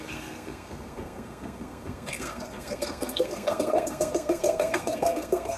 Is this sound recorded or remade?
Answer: remade